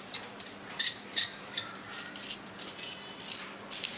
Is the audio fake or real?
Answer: fake